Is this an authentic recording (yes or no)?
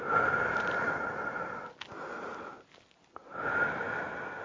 yes